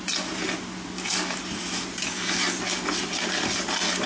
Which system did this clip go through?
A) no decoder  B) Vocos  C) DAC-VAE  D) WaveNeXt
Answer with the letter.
A